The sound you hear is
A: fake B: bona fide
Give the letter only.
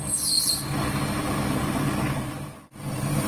B